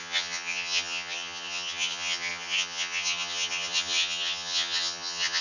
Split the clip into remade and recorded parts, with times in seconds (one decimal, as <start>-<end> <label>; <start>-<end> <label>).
0.0-5.4 remade